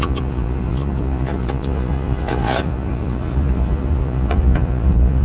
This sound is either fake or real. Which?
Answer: fake